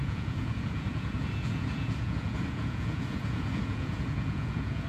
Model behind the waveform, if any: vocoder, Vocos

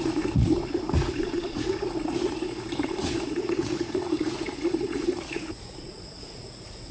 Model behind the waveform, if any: vocoder, Vocos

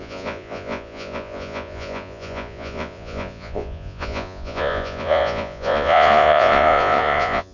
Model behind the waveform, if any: vocoder, Vocos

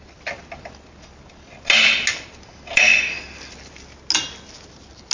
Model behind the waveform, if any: none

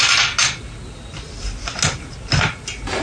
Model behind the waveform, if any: none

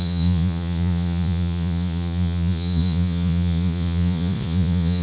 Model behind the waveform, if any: vocoder, Vocos